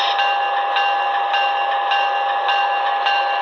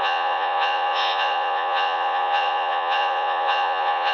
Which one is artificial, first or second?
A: second